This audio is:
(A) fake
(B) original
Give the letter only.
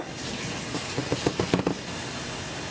B